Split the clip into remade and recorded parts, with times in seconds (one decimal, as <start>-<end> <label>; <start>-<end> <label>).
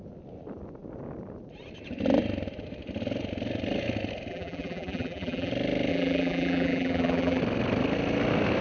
0.0-4.3 recorded; 4.3-5.5 remade; 5.5-5.9 recorded; 5.9-7.4 remade; 7.4-8.6 recorded